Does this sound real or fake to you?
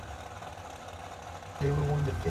real